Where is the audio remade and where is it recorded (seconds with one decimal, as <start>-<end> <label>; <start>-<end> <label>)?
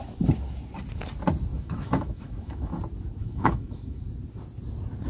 0.0-1.5 recorded; 1.5-2.8 remade; 2.8-3.2 recorded; 3.2-4.0 remade; 4.0-5.1 recorded